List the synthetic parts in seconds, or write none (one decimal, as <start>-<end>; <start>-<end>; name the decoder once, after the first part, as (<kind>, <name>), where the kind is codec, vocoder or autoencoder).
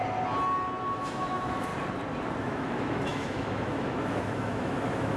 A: 0.8-1.7 (autoencoder, DAC-VAE); 2.4-5.2